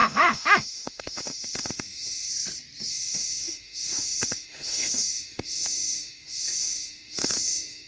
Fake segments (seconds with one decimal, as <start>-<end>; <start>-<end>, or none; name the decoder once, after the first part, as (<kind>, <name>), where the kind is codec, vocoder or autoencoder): 0.0-2.3 (autoencoder, DAC-VAE); 2.9-7.9